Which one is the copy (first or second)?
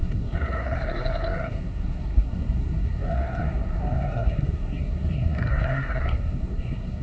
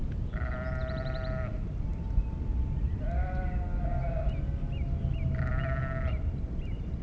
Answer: first